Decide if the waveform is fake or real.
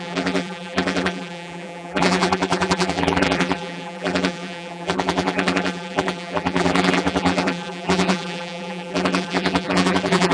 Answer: fake